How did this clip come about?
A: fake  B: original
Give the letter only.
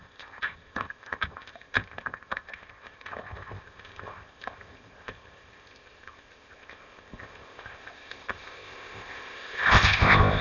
A